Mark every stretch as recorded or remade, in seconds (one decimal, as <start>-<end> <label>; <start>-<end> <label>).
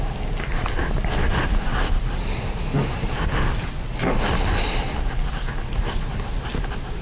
0.0-7.0 recorded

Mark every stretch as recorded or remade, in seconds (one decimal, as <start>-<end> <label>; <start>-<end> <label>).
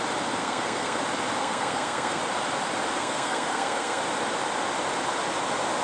0.0-0.4 recorded; 0.4-1.0 remade; 1.0-1.4 recorded; 1.4-2.2 remade; 2.2-3.0 recorded; 3.0-4.0 remade; 4.0-5.8 recorded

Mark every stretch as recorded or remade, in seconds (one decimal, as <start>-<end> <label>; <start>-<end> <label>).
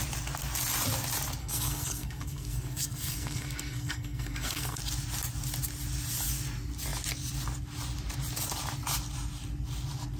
0.0-1.4 recorded; 1.4-4.8 remade; 4.8-10.2 recorded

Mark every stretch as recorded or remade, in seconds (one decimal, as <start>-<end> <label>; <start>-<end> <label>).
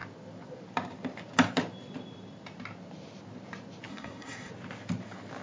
0.0-3.9 recorded; 3.9-4.5 remade; 4.5-5.4 recorded